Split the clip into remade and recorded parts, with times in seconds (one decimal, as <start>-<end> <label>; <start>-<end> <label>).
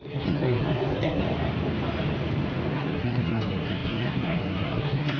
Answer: 0.0-1.2 remade; 1.2-2.7 recorded; 2.7-5.2 remade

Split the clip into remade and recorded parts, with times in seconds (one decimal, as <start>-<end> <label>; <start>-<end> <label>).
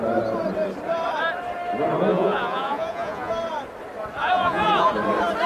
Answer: 0.0-2.1 recorded; 2.1-3.3 remade; 3.3-4.2 recorded; 4.2-4.9 remade; 4.9-5.5 recorded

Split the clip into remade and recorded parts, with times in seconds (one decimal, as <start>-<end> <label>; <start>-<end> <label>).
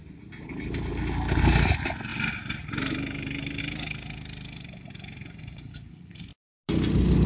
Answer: 0.0-7.3 recorded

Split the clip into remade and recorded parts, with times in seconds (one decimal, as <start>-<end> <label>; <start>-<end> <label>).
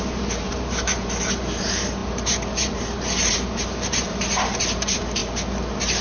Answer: 0.0-6.0 remade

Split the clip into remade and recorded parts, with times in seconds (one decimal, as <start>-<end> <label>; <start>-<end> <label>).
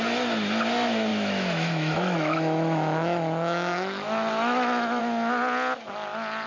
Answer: 0.0-1.1 recorded; 1.1-5.0 remade; 5.0-6.5 recorded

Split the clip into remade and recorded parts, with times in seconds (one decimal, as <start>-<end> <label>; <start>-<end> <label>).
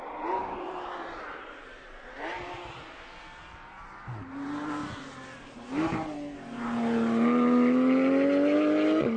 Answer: 0.0-4.8 remade; 4.8-9.2 recorded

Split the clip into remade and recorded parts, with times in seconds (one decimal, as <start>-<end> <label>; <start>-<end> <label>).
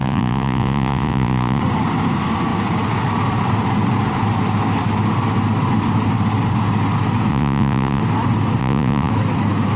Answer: 0.0-1.6 remade; 1.6-7.3 recorded; 7.3-8.0 remade; 8.0-8.6 recorded; 8.6-9.1 remade; 9.1-9.8 recorded